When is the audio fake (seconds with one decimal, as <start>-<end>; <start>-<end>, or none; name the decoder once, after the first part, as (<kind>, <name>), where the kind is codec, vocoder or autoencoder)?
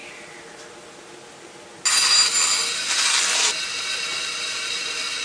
none